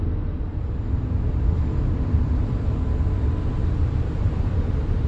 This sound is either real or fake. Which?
fake